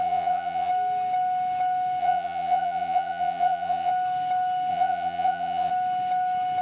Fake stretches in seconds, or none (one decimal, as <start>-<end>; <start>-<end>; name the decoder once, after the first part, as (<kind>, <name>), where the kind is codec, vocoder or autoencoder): 0.0-0.7 (vocoder, Vocos); 2.0-3.9; 4.7-5.7